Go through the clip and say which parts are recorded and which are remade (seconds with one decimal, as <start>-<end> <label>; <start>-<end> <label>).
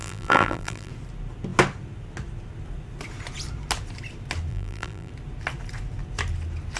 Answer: 0.0-0.9 remade; 0.9-4.5 recorded; 4.5-5.1 remade; 5.1-6.8 recorded